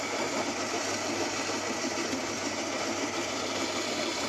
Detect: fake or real real